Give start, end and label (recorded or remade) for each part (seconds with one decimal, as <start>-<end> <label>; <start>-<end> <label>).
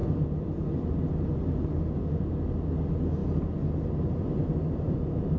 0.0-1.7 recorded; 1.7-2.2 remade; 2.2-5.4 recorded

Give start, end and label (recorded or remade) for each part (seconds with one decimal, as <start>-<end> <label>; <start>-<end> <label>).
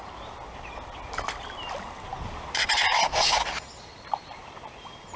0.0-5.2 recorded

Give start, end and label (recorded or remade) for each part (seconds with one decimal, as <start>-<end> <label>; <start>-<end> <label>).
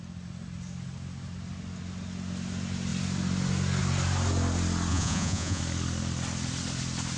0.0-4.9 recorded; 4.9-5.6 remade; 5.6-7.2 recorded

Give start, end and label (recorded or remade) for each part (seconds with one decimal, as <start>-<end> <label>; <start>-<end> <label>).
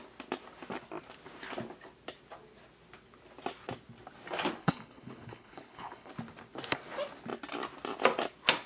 0.0-4.6 recorded; 4.6-6.1 remade; 6.1-8.7 recorded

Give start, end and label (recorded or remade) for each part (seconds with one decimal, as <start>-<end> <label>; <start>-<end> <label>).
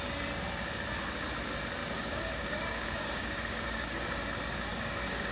0.0-1.8 recorded; 1.8-4.0 remade; 4.0-4.7 recorded; 4.7-5.3 remade